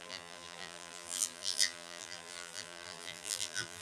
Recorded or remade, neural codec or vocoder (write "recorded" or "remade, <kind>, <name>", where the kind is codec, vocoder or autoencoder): remade, vocoder, BigVGAN v2